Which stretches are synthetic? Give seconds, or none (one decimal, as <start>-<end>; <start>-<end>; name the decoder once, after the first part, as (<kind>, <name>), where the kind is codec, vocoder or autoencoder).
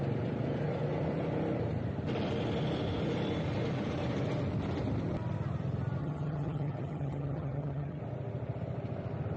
6.0-8.0 (vocoder, HiFi-GAN)